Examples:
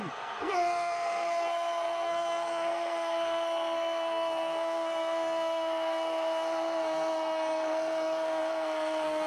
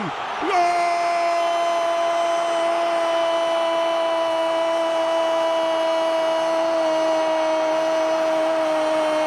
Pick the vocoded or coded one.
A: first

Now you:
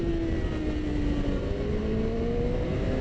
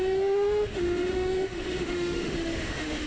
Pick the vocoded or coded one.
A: second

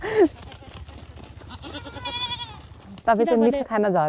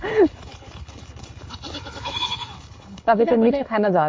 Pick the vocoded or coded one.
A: second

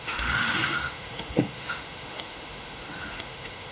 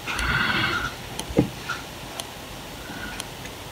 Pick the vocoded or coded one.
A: first